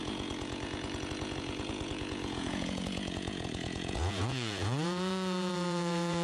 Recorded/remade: remade